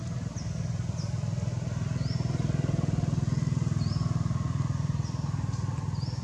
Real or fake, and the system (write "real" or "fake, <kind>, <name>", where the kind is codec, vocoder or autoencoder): real